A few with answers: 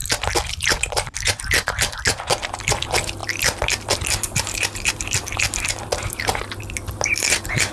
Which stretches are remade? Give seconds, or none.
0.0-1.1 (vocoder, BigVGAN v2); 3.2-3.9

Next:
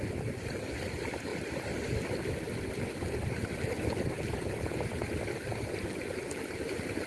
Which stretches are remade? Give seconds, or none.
0.0-7.1 (vocoder, BigVGAN v2)

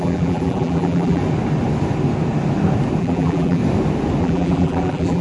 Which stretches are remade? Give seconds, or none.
0.0-1.2 (vocoder, BigVGAN v2); 3.0-3.6; 4.2-5.2

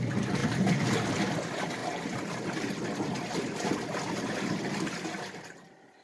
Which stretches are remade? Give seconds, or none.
0.4-1.2 (vocoder, BigVGAN v2); 1.8-2.4

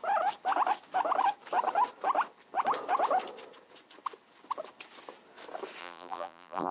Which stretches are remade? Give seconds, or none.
5.8-6.7 (vocoder, BigVGAN v2)

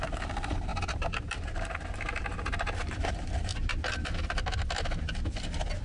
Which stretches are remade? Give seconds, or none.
0.0-3.5 (vocoder, BigVGAN v2)